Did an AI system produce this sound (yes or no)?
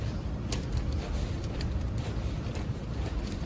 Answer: no